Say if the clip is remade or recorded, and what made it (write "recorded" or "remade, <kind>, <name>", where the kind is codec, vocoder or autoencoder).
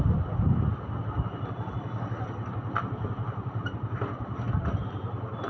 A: recorded